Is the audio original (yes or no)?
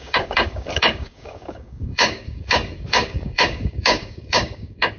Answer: no